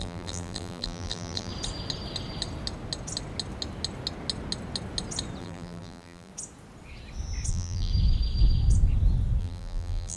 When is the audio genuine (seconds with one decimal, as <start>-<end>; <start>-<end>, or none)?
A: 1.5-5.4; 6.3-7.5; 7.9-9.4